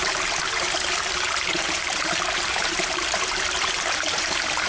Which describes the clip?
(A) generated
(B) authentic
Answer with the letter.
A